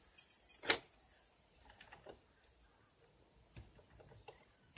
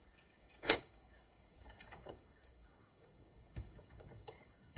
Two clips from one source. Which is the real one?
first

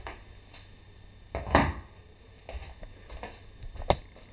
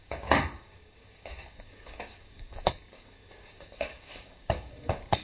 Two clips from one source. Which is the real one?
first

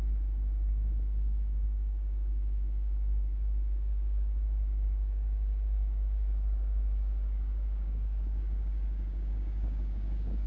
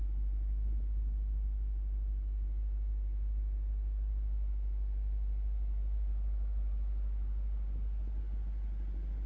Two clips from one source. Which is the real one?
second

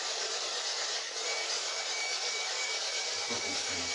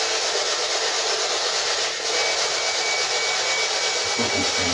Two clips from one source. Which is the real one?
second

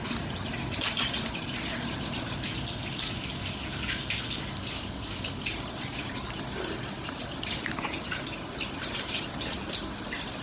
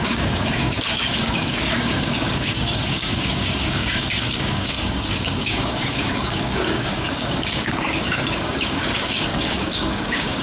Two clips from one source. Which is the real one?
first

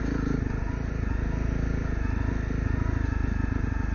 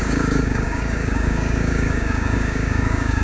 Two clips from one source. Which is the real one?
first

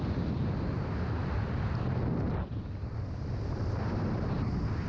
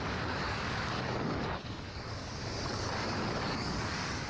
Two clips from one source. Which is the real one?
first